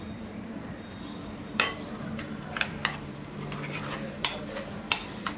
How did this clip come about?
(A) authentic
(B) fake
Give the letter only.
B